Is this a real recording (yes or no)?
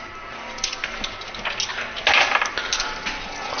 yes